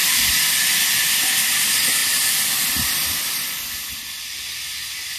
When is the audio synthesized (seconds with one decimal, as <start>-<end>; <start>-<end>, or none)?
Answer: 0.0-0.9; 2.0-5.2